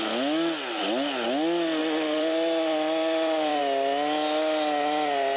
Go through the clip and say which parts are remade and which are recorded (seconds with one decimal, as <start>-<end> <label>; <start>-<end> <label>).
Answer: 0.0-1.8 recorded; 1.8-3.6 remade; 3.6-5.4 recorded